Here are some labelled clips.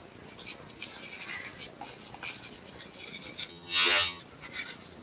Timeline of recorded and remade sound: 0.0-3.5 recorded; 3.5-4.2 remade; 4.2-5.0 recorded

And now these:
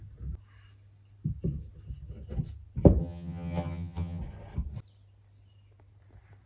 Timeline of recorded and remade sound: 0.0-3.0 recorded; 3.0-4.2 remade; 4.2-6.5 recorded

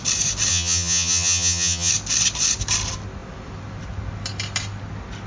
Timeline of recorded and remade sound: 0.0-0.5 recorded; 0.5-1.9 remade; 1.9-5.3 recorded

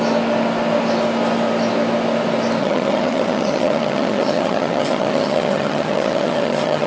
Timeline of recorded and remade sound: 0.0-2.6 recorded; 2.6-6.9 remade

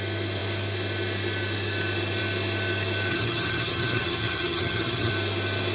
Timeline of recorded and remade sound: 0.0-3.1 recorded; 3.1-5.1 remade; 5.1-5.7 recorded

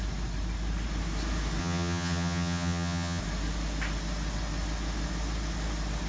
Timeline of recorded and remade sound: 0.0-1.6 recorded; 1.6-3.2 remade; 3.2-6.1 recorded

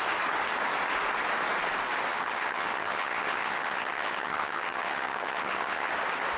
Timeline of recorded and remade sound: 0.0-2.1 recorded; 2.1-5.9 remade; 5.9-6.4 recorded

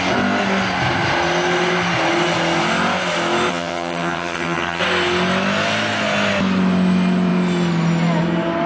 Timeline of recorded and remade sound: 0.0-3.5 recorded; 3.5-4.8 remade; 4.8-8.7 recorded